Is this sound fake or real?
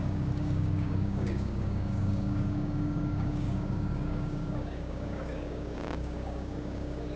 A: fake